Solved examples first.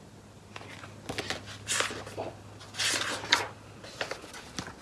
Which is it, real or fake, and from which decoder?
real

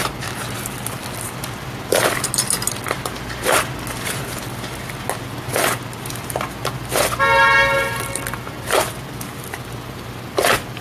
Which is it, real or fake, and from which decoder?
real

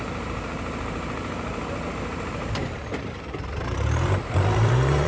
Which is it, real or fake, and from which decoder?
fake, vocoder, BigVGAN v2